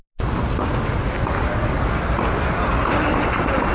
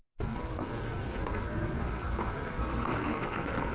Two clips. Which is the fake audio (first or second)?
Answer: second